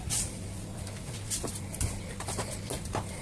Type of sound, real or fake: real